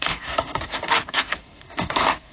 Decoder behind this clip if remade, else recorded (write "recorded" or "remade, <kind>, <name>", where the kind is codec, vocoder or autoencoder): remade, codec, SNAC